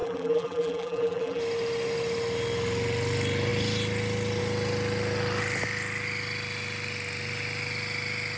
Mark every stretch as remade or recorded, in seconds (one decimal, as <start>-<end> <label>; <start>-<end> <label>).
0.0-1.4 remade; 1.4-8.4 recorded